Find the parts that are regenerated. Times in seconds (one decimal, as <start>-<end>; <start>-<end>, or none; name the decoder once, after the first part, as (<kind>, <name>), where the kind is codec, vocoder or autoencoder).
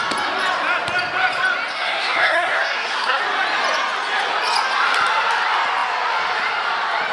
1.7-3.2 (codec, SNAC)